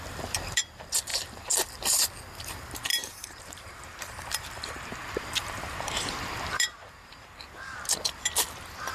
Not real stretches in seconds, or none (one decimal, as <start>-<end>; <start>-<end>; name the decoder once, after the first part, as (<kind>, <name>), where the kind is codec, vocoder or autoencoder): 2.9-7.2 (vocoder, BigVGAN v2)

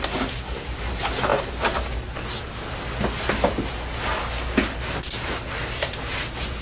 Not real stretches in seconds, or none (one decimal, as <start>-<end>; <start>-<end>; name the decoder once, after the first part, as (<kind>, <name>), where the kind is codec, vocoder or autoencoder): none